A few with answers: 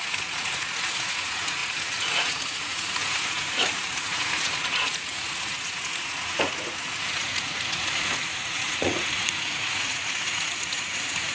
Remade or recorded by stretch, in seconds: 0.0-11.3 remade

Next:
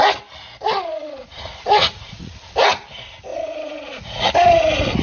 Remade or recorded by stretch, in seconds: 0.0-0.9 recorded; 0.9-2.5 remade; 2.5-3.3 recorded; 3.3-4.3 remade; 4.3-5.0 recorded

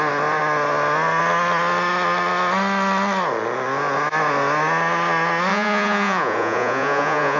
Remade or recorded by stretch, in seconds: 0.0-5.5 recorded; 5.5-7.4 remade